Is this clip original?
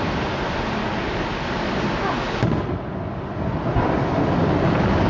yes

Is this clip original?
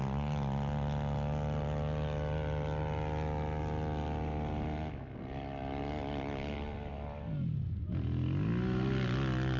yes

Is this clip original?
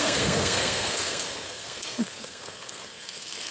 no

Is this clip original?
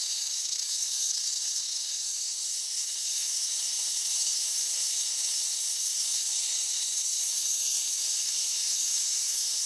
no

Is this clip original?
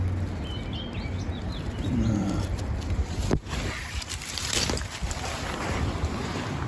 yes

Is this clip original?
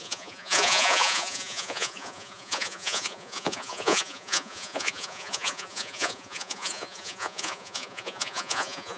no